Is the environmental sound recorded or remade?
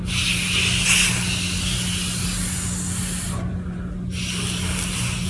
recorded